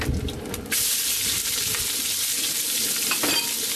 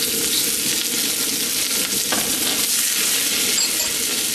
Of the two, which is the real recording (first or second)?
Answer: second